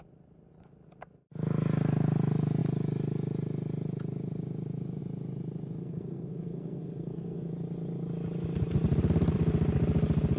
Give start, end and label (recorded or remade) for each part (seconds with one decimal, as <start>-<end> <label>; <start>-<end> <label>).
0.0-5.8 recorded; 5.8-7.5 remade; 7.5-10.4 recorded